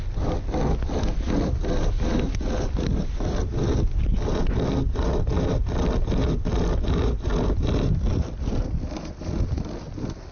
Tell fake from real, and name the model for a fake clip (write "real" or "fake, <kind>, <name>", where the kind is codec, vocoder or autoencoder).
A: real